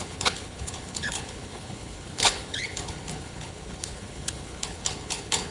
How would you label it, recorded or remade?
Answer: remade